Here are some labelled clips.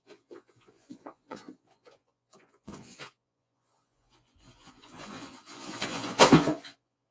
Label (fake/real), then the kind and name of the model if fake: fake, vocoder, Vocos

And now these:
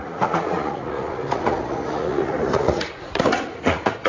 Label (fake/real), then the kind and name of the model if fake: fake, vocoder, Vocos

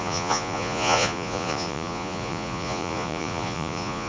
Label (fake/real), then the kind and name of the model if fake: fake, vocoder, Vocos